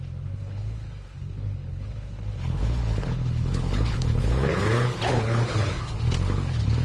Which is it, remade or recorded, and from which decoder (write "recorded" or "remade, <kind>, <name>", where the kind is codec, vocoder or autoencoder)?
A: remade, codec, HILCodec